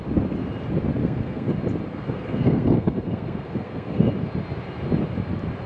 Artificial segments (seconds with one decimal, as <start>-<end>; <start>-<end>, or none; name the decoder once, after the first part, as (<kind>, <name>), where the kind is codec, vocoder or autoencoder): 1.0-1.5 (codec, SNAC); 1.9-4.1